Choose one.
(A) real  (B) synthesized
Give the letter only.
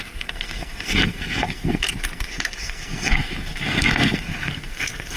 B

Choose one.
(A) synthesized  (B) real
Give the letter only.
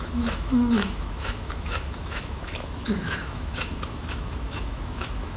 A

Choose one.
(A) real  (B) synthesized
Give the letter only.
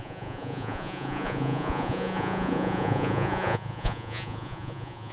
B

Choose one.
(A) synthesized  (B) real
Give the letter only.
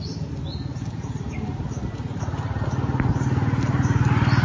B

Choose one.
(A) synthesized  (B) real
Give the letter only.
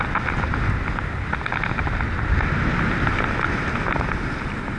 B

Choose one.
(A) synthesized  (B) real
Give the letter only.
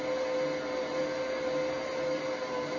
B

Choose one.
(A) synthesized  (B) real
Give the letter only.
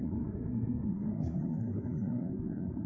A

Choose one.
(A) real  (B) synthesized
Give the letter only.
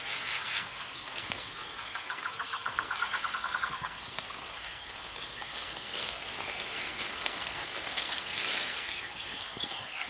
B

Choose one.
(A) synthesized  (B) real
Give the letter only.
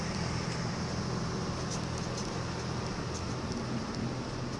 B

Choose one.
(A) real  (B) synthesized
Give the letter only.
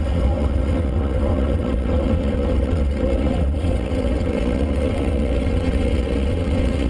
B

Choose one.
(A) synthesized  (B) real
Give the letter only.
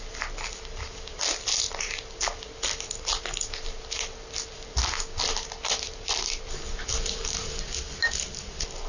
B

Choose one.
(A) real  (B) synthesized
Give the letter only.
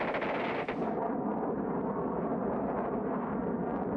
A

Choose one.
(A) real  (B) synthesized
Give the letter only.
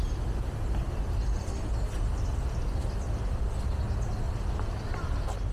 A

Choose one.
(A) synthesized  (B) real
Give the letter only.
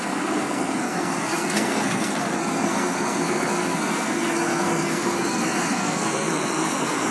A